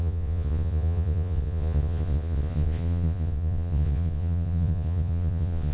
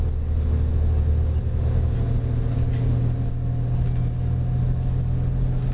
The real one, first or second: second